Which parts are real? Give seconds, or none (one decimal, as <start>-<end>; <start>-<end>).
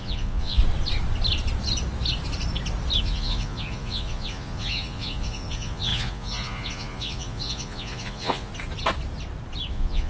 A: 0.6-3.0; 8.5-9.7